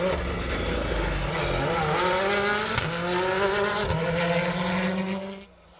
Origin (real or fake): real